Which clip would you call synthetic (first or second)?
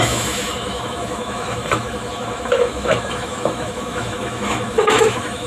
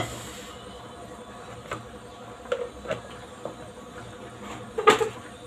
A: first